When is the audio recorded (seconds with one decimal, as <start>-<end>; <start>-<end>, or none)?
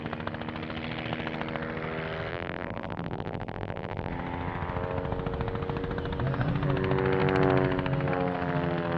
0.0-2.3; 4.1-9.0